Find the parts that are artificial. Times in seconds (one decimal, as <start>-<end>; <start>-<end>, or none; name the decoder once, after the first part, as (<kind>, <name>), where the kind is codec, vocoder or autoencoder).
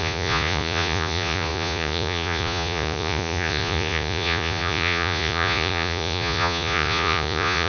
0.0-7.7 (vocoder, Vocos)